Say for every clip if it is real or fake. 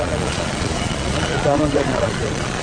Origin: fake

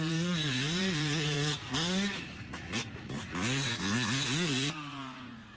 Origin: fake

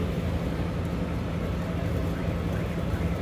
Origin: real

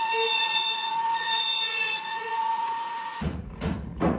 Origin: fake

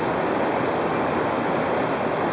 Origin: real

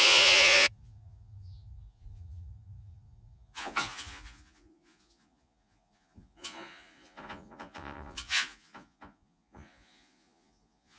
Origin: fake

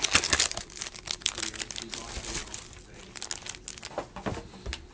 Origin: real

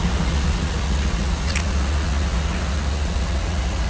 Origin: fake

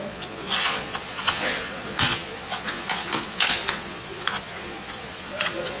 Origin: fake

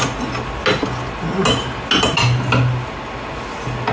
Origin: real